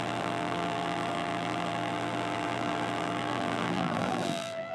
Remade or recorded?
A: remade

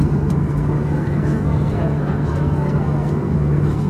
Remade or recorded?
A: remade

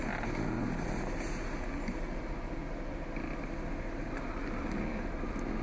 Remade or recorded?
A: recorded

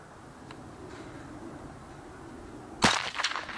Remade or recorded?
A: recorded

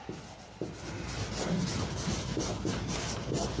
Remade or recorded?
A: recorded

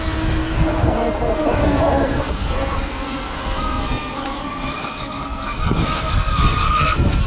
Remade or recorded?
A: remade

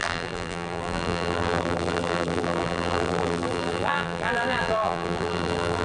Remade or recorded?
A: remade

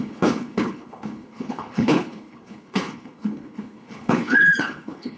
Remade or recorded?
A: remade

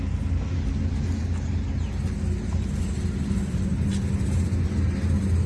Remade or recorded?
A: recorded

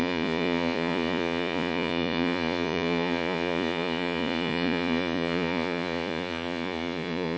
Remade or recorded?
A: remade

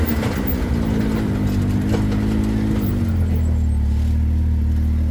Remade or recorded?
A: recorded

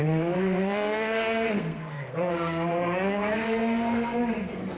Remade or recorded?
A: remade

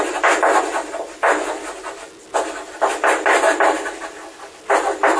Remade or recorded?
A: recorded